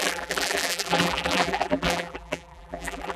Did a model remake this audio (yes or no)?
yes